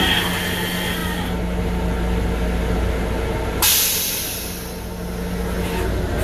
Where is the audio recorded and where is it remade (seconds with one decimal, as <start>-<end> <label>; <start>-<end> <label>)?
0.0-6.2 recorded